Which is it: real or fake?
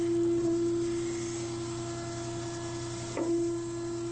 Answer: real